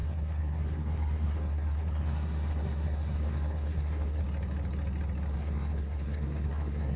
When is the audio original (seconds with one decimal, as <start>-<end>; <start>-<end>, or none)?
4.2-5.3